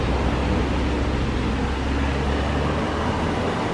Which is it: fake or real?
real